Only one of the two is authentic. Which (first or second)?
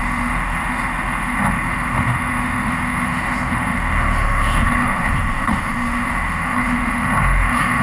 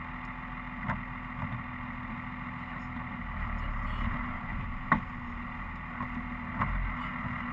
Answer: second